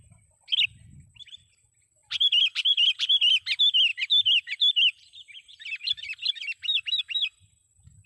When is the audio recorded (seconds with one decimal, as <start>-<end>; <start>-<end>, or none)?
0.0-2.0; 2.9-3.9; 7.0-8.1